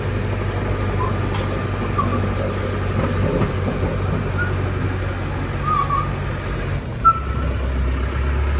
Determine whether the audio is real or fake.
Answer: real